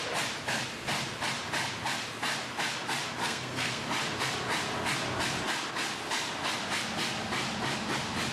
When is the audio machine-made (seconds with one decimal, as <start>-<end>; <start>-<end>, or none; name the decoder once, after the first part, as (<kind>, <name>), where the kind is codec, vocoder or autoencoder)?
3.2-3.8 (codec, SNAC)